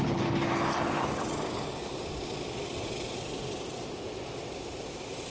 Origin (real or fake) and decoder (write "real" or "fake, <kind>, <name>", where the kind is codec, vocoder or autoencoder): real